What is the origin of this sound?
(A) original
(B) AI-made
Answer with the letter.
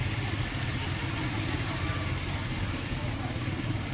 B